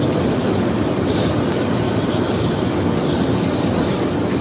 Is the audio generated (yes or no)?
no